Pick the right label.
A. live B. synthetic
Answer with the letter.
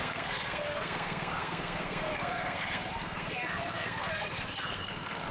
B